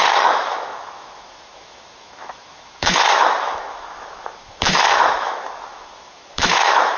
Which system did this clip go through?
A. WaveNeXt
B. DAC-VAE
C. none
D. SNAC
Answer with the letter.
B